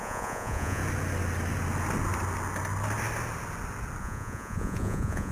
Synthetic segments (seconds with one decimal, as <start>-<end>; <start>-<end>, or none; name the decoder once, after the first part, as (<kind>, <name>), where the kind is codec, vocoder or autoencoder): 0.0-0.8 (vocoder, Vocos); 4.0-5.3